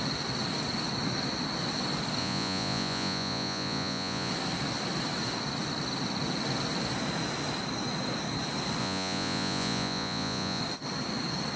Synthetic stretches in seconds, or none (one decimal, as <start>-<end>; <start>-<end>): 2.2-4.3; 8.8-10.6